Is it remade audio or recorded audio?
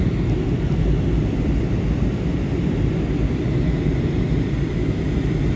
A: remade